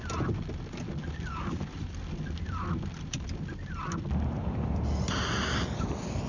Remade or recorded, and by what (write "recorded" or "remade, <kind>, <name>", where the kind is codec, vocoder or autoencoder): recorded